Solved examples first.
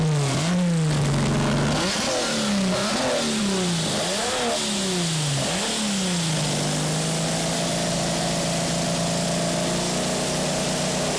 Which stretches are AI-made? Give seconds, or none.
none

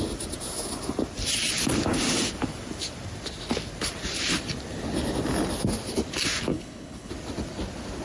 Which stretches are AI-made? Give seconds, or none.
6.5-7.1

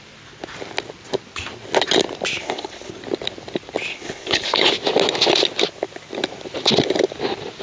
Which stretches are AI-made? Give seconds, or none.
2.4-2.9; 3.9-4.7

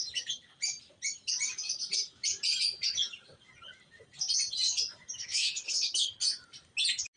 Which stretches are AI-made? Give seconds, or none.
5.2-6.2